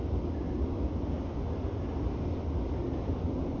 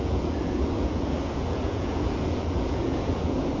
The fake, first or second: second